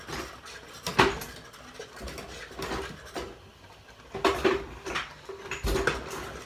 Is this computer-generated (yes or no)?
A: no